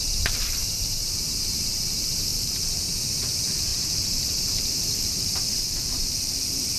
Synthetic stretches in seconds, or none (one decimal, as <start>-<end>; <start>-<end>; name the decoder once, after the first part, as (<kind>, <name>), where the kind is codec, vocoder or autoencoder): 0.0-6.8 (vocoder, BigVGAN v2)